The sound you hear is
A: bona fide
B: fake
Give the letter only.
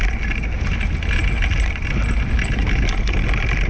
A